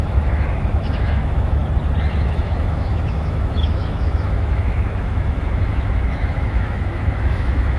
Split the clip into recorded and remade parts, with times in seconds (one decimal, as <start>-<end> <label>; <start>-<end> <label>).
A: 0.0-1.6 remade; 1.6-2.1 recorded; 2.1-7.8 remade